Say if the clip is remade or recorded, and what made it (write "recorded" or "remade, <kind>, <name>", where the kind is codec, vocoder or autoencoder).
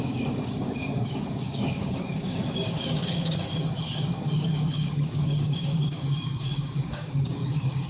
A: remade, codec, DAC